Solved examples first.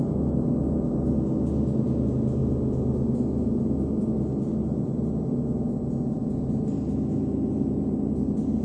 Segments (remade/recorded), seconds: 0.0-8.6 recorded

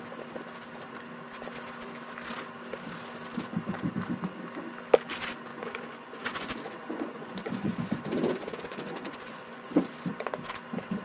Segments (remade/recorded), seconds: 0.0-5.5 recorded; 5.5-10.5 remade; 10.5-11.0 recorded

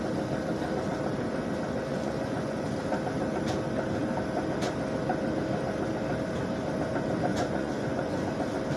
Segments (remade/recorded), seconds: 0.0-1.9 recorded; 1.9-2.6 remade; 2.6-7.3 recorded; 7.3-8.3 remade; 8.3-8.8 recorded